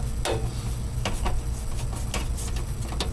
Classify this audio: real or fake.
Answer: real